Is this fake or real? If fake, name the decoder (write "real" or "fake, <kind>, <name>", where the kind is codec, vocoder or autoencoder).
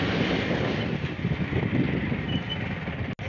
real